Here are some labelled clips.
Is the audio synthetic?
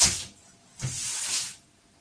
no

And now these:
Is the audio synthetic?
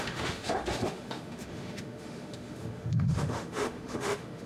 yes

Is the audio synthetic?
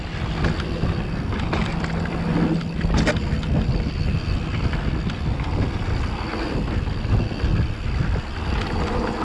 no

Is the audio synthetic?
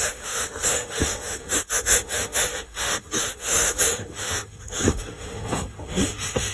yes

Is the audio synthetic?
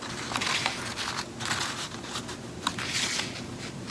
no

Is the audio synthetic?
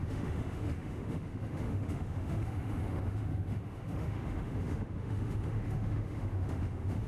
yes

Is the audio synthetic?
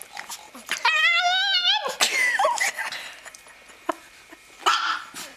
no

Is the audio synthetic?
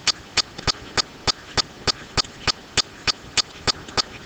no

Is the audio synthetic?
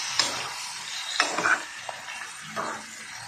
no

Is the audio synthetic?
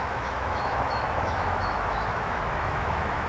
yes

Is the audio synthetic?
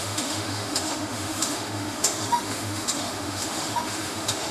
yes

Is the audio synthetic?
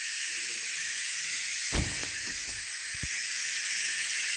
yes